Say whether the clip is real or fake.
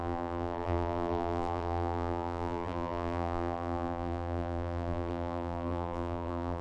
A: fake